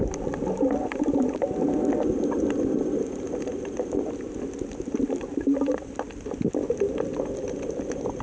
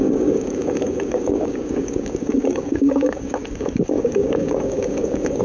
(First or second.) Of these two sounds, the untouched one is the first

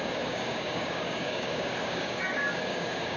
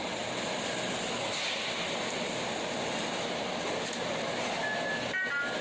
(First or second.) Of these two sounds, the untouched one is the second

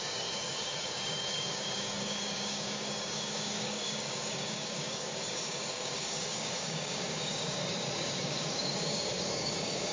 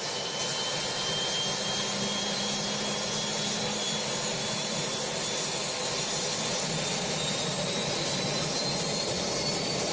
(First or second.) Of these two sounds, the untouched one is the second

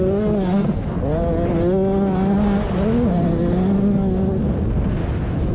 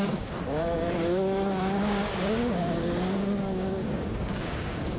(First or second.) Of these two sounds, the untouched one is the first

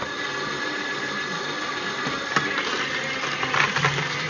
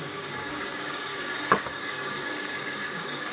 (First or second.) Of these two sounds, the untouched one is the first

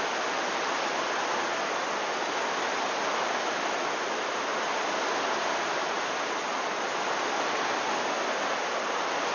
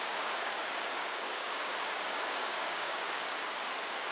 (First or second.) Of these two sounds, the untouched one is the first